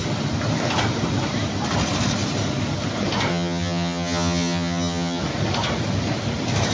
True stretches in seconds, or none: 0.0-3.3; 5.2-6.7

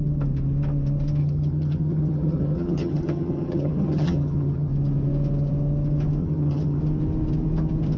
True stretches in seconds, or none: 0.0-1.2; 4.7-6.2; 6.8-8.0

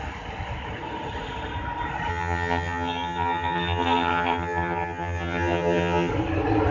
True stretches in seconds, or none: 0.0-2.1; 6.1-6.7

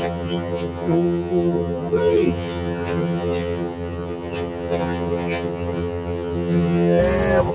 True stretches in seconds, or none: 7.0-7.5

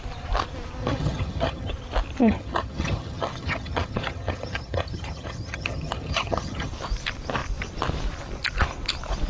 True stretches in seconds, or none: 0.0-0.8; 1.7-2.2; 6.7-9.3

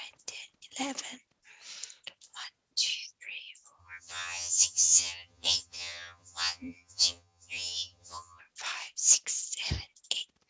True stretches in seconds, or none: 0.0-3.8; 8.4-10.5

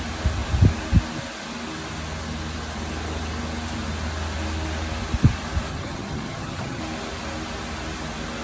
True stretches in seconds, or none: 0.0-5.7; 6.8-8.4